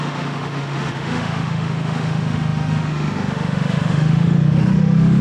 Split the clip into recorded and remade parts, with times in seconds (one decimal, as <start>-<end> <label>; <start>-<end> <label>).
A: 0.0-5.2 remade